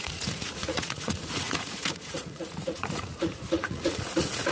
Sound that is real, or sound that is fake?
fake